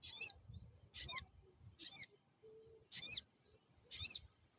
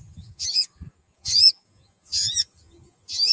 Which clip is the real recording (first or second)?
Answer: first